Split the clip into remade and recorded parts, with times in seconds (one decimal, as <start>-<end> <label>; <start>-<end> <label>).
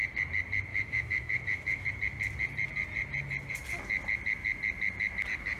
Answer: 0.0-0.7 recorded; 0.7-1.9 remade; 1.9-5.6 recorded